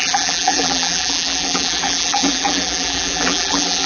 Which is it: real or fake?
fake